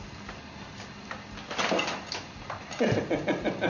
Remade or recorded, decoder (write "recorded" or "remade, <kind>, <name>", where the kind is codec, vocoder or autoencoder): recorded